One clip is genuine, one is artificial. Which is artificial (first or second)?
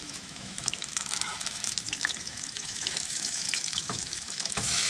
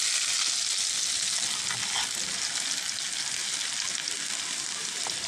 first